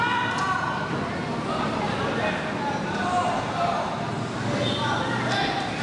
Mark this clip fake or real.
real